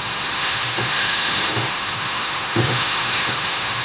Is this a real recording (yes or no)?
no